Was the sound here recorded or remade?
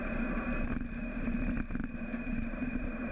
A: recorded